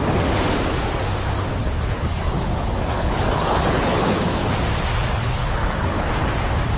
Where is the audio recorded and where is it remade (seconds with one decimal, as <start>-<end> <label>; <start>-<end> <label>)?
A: 0.0-1.6 recorded; 1.6-4.6 remade; 4.6-5.2 recorded; 5.2-6.1 remade; 6.1-6.8 recorded